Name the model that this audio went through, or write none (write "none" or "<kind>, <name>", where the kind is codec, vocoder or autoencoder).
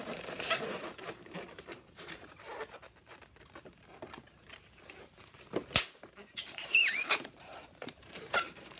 vocoder, BigVGAN v2